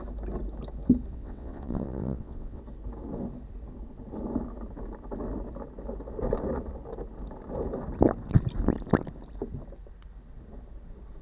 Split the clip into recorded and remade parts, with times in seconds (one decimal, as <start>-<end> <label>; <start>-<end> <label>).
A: 0.0-1.1 recorded; 1.1-2.6 remade; 2.6-11.2 recorded